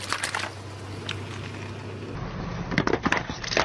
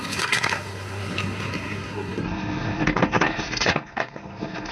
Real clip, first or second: first